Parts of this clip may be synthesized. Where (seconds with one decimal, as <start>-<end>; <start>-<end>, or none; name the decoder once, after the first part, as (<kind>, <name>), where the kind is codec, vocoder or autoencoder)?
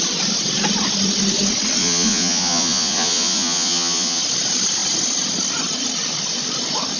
1.8-4.2 (vocoder, Vocos)